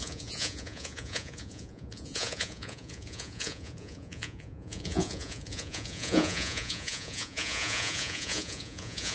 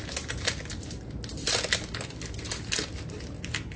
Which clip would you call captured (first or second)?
second